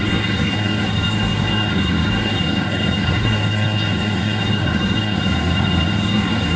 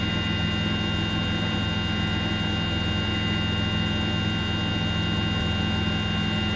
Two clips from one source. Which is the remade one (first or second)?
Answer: first